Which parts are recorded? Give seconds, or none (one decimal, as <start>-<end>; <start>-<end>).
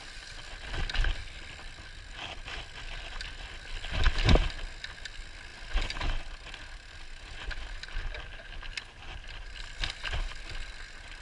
0.0-11.2